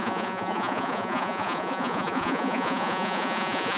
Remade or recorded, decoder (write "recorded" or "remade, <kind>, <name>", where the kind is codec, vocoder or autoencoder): remade, vocoder, Vocos